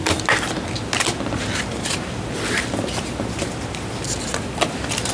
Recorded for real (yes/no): yes